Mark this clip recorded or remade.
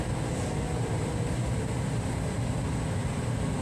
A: recorded